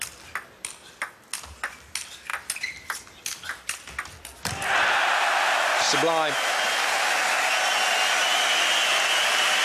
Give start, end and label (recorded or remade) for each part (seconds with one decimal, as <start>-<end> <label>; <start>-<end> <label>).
0.0-9.6 recorded